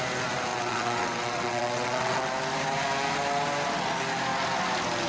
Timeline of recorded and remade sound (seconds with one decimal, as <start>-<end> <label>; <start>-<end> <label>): 0.0-0.5 recorded; 0.5-2.3 remade; 2.3-5.1 recorded

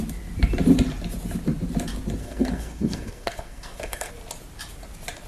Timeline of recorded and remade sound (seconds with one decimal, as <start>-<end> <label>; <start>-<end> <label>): 0.0-2.2 recorded; 2.2-4.1 remade; 4.1-5.3 recorded